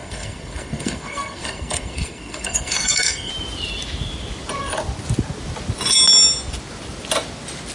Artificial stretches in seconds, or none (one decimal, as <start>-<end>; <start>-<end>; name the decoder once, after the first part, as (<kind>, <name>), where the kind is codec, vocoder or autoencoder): 0.0-3.3 (codec, SNAC)